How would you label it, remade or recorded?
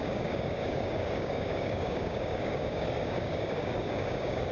remade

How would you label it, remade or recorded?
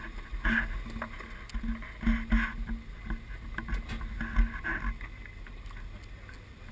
recorded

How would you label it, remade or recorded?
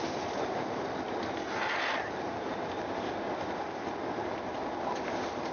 recorded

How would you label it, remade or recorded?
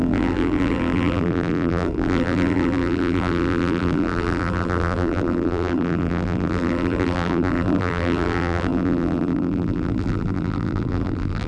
remade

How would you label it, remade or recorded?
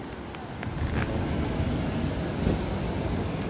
recorded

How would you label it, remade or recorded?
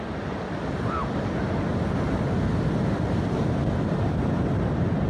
recorded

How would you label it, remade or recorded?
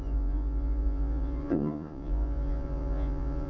remade